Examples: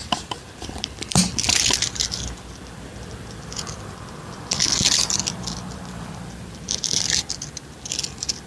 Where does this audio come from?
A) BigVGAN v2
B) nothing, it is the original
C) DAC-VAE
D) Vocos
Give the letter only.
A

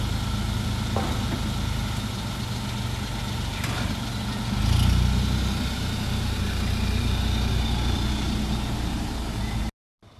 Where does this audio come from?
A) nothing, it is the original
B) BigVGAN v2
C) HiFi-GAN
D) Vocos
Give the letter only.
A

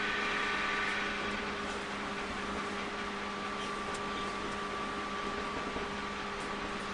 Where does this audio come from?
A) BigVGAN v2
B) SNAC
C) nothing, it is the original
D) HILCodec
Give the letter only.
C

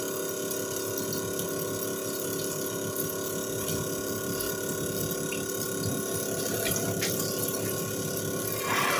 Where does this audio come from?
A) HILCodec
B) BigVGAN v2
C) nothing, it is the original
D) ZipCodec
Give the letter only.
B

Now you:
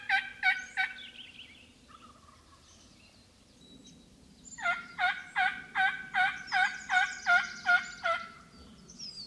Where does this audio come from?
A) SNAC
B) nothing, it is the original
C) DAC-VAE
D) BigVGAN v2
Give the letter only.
B